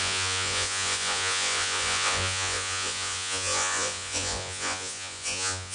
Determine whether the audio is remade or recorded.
remade